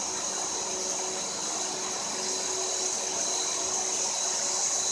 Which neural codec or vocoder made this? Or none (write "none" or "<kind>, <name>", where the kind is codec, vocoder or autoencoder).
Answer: none